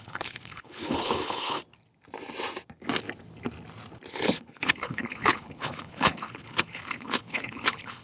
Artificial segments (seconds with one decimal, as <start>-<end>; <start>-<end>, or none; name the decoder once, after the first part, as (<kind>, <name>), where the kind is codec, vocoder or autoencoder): 0.0-1.6 (codec, HILCodec); 4.1-8.0